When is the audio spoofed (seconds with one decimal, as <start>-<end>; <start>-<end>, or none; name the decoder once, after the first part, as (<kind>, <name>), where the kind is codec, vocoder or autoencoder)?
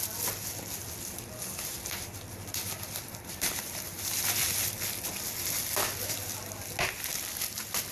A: 2.6-4.7 (vocoder, BigVGAN v2)